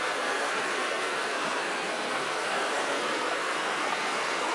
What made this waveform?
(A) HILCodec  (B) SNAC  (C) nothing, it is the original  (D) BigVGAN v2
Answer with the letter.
B